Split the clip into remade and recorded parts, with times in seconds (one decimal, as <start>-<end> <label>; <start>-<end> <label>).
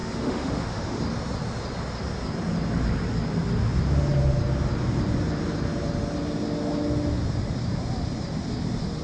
0.0-1.0 remade; 1.0-9.0 recorded